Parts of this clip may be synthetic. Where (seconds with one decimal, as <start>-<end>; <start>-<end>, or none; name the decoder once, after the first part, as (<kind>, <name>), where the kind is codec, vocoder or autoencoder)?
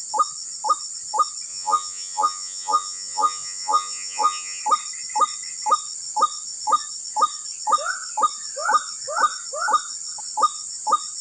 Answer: 1.5-4.6 (vocoder, Vocos)